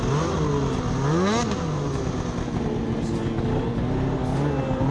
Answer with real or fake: real